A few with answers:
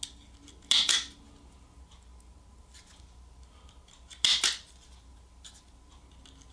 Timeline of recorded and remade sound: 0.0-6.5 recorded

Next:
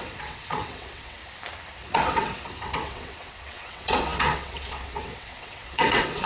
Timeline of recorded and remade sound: 0.0-1.2 remade; 1.2-1.9 recorded; 1.9-6.3 remade

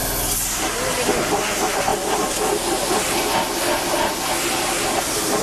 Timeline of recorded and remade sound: 0.0-5.4 recorded

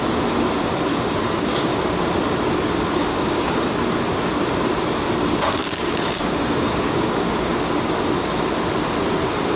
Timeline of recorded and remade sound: 0.0-0.9 recorded; 0.9-1.8 remade; 1.8-3.0 recorded; 3.0-3.7 remade; 3.7-5.6 recorded; 5.6-7.6 remade; 7.6-9.6 recorded

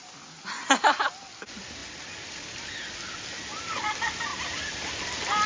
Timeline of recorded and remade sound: 0.0-1.8 recorded; 1.8-2.4 remade; 2.4-4.3 recorded; 4.3-5.1 remade; 5.1-5.5 recorded

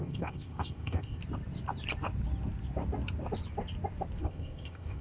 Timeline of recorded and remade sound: 0.0-1.2 remade; 1.2-4.2 recorded; 4.2-5.0 remade

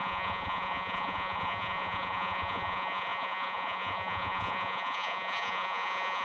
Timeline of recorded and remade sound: 0.0-6.2 remade

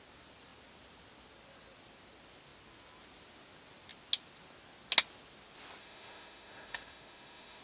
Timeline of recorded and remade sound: 0.0-5.8 recorded; 5.8-7.6 remade